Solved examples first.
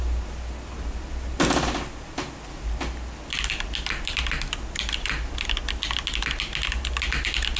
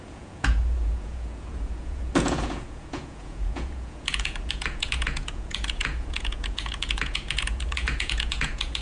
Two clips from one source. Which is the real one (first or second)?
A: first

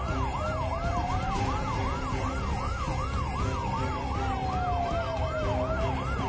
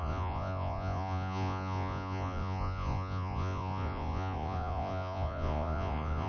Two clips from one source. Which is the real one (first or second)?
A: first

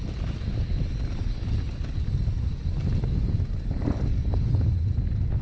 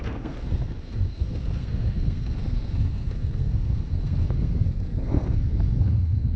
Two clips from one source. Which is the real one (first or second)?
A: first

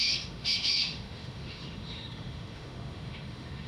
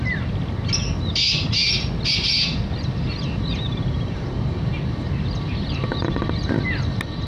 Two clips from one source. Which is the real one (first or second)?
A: second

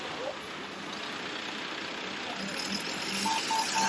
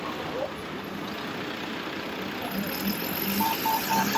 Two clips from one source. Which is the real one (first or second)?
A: first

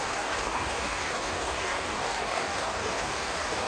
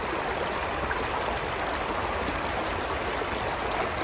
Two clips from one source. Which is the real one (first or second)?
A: second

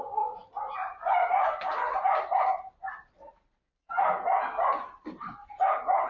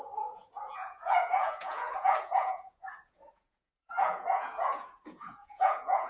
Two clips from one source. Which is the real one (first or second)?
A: first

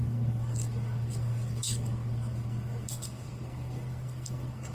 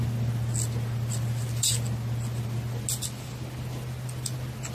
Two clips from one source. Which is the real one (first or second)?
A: second